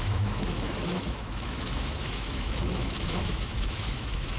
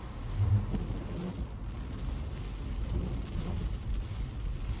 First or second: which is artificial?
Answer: first